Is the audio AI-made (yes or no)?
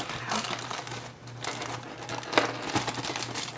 no